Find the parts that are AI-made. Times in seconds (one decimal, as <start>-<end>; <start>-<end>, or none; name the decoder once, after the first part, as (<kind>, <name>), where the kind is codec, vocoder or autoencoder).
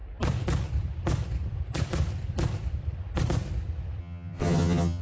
4.0-5.0 (vocoder, HiFi-GAN)